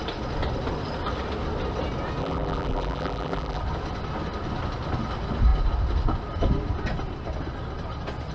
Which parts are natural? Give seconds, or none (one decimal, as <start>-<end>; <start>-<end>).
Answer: 0.0-2.2; 3.6-8.3